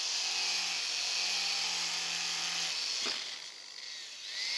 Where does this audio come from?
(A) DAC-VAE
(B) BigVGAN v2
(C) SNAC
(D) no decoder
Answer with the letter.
D